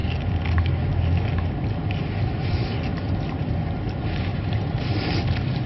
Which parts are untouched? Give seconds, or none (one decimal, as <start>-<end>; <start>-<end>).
0.0-2.9; 3.6-4.3; 5.0-5.7